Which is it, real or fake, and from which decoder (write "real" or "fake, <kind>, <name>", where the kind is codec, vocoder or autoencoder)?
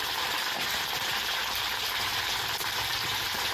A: fake, vocoder, BigVGAN v2